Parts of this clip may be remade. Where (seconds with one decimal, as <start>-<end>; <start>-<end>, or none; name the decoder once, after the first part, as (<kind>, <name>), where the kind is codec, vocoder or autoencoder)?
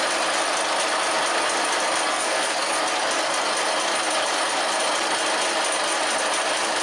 2.1-2.8 (codec, SNAC)